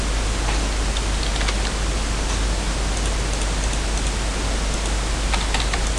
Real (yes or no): yes